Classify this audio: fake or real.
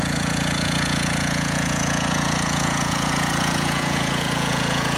fake